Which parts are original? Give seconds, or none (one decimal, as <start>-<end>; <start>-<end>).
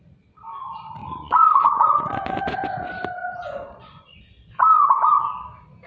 0.0-1.0; 2.4-3.2; 4.2-5.9